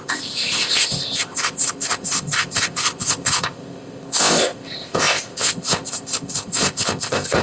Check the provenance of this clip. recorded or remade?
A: remade